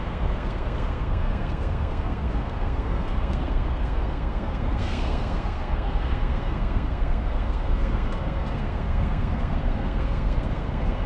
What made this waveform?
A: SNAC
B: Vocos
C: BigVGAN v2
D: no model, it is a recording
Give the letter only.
A